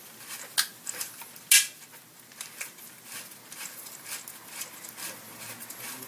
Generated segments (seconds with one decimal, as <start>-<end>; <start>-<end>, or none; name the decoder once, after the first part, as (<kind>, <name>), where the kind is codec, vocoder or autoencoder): none